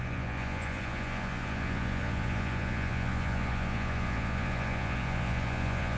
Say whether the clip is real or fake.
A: fake